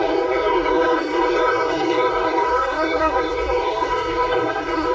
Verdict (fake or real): fake